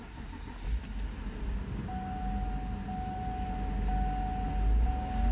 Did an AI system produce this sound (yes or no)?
no